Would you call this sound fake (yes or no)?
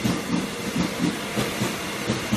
no